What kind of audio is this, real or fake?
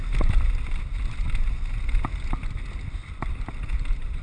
real